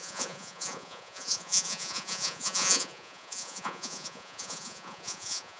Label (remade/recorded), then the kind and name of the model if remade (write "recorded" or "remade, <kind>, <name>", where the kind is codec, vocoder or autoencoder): remade, vocoder, Vocos